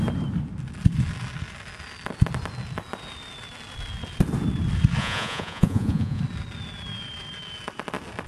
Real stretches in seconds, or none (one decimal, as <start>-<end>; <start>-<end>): 0.0-5.0; 6.2-8.3